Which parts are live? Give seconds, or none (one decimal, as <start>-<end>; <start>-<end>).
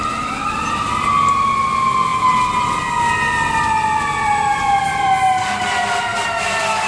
0.0-6.9